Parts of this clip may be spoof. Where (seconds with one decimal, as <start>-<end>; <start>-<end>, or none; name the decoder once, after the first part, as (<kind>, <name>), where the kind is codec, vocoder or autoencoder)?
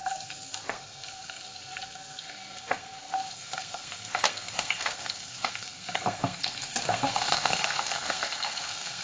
0.0-9.0 (codec, SNAC)